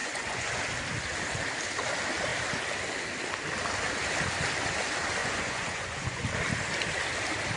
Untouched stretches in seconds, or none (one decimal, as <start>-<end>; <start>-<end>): 0.6-5.2; 6.2-7.6